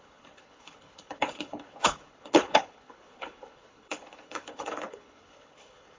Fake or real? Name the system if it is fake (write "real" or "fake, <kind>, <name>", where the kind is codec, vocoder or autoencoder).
fake, codec, HILCodec